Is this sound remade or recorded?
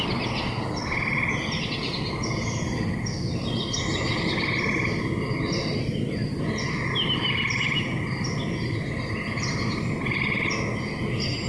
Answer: recorded